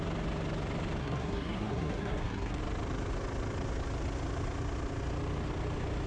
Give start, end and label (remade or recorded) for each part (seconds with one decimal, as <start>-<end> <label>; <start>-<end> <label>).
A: 0.0-1.0 recorded; 1.0-2.6 remade; 2.6-6.1 recorded